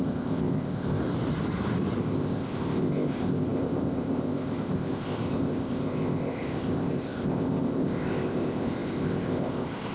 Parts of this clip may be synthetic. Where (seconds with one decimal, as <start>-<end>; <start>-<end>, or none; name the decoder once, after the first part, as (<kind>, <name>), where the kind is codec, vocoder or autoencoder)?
0.0-1.0 (codec, ZipCodec); 2.0-9.9